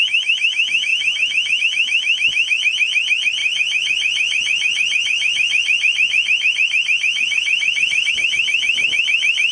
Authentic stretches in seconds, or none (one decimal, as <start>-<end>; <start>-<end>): 0.0-3.4; 8.1-9.5